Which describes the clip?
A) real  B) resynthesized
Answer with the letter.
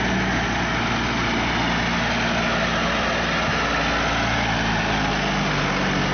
A